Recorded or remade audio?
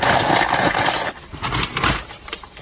remade